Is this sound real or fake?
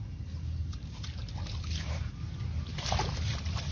real